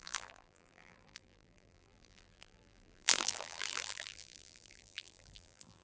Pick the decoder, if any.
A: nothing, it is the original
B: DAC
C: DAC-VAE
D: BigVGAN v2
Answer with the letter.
D